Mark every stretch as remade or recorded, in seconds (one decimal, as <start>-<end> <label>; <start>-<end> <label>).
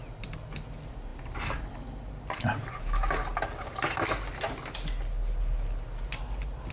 0.0-6.7 recorded